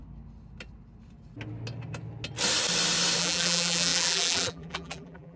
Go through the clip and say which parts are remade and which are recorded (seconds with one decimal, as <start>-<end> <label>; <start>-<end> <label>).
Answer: 0.0-3.2 recorded; 3.2-5.4 remade